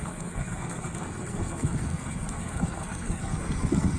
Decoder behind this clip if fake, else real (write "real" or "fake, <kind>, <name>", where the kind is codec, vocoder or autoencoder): fake, codec, SNAC